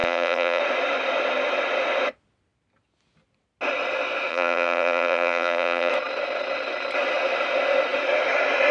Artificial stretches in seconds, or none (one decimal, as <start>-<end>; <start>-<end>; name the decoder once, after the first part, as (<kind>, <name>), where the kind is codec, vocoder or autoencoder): 0.0-0.6 (vocoder, BigVGAN v2); 4.3-5.9